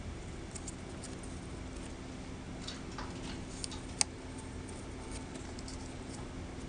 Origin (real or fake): real